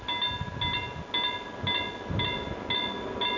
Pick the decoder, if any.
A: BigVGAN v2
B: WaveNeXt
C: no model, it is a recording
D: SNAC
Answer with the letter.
C